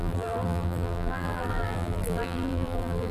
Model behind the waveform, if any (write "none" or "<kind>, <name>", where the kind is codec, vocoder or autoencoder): vocoder, BigVGAN v2